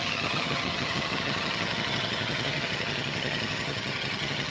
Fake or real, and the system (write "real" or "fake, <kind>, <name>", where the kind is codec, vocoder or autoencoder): fake, vocoder, HiFi-GAN